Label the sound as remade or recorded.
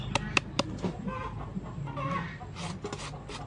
recorded